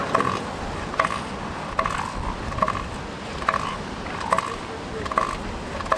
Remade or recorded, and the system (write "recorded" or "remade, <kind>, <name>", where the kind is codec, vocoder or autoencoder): recorded